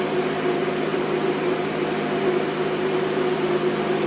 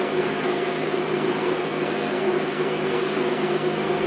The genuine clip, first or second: first